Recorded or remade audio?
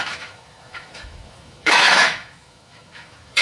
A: remade